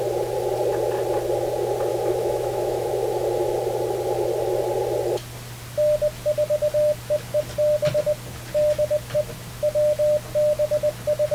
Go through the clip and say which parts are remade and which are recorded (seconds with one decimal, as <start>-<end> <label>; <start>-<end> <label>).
0.0-1.9 recorded; 1.9-2.9 remade; 2.9-11.3 recorded